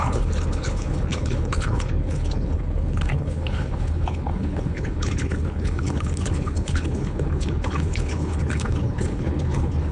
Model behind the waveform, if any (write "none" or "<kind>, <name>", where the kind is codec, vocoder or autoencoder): codec, HILCodec